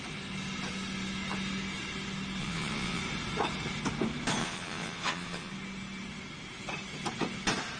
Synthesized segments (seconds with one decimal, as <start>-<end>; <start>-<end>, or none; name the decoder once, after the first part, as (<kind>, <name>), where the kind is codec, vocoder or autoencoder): 2.4-3.0 (vocoder, Vocos); 4.4-5.5